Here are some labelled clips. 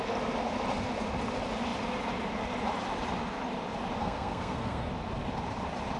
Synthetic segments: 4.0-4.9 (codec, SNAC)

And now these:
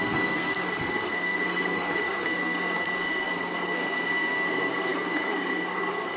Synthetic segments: 0.0-6.2 (codec, SNAC)

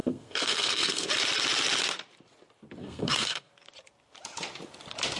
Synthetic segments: 0.0-1.1 (codec, SNAC); 2.8-3.5

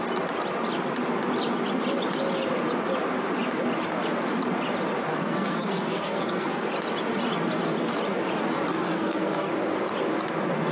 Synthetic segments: 5.1-6.6 (codec, SNAC); 8.7-9.5

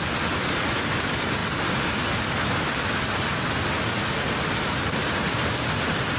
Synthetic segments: none

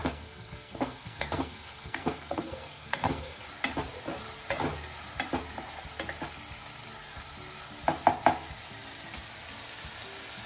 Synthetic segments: 0.0-3.4 (codec, SNAC)